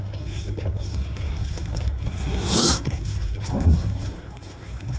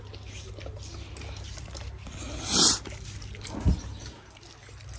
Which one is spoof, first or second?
first